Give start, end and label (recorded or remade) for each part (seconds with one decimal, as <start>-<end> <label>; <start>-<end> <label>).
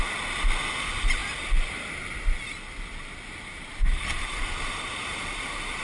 0.0-3.5 recorded; 3.5-5.8 remade